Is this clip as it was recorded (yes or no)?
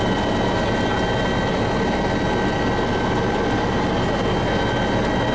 yes